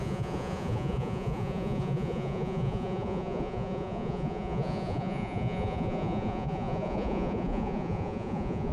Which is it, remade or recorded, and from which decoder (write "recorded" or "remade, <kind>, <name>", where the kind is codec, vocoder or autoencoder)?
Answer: remade, vocoder, Vocos